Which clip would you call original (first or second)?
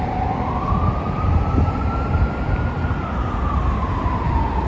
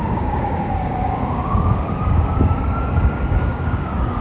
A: first